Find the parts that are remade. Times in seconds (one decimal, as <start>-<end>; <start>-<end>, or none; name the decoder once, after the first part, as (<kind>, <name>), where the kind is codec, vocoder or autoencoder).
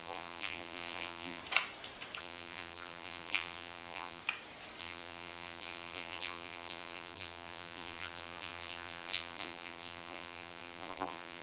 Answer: 0.0-1.4 (vocoder, BigVGAN v2); 2.2-4.2; 4.8-11.4